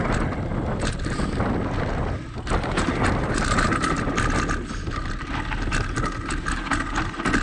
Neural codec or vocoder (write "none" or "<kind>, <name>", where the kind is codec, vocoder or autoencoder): none